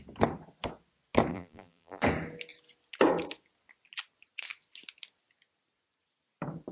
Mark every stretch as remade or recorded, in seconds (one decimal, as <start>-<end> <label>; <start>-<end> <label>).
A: 0.0-1.3 recorded; 1.3-2.0 remade; 2.0-6.7 recorded